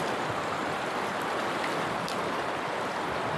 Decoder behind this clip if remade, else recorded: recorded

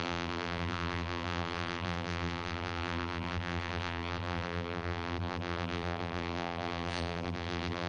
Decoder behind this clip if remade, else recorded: remade, vocoder, BigVGAN v2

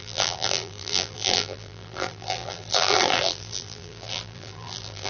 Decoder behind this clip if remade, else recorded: remade, vocoder, BigVGAN v2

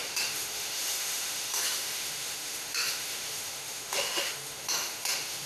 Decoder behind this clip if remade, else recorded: remade, autoencoder, DAC-VAE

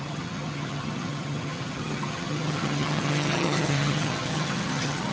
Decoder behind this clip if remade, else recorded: remade, vocoder, HiFi-GAN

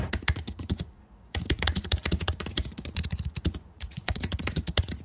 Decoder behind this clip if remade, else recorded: remade, vocoder, Vocos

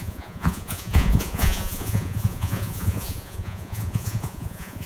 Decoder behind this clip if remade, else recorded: remade, vocoder, Vocos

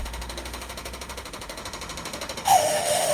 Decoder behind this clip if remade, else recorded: remade, autoencoder, DAC-VAE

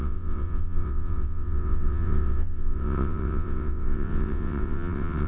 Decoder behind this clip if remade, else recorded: remade, vocoder, WaveNeXt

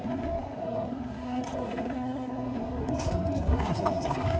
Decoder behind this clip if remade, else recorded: remade, codec, SNAC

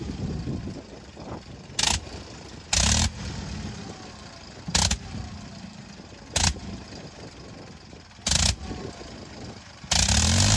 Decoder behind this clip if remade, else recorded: recorded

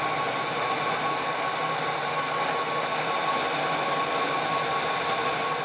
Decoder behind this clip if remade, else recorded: recorded